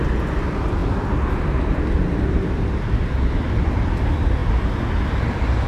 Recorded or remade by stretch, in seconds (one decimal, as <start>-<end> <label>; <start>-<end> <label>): 0.0-5.7 recorded